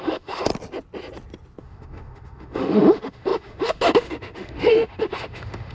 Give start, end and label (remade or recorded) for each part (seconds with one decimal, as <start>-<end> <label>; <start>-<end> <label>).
0.0-0.5 remade; 0.5-1.6 recorded; 1.6-5.7 remade